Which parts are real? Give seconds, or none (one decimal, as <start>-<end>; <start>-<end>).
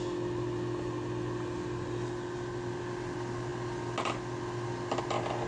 0.0-5.5